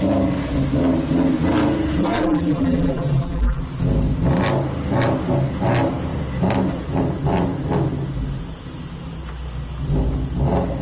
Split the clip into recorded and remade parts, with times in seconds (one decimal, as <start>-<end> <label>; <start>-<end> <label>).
0.0-2.0 recorded; 2.0-3.6 remade; 3.6-10.8 recorded